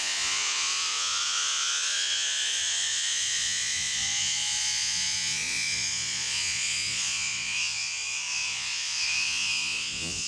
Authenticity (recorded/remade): remade